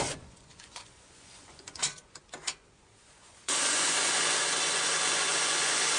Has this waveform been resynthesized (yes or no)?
yes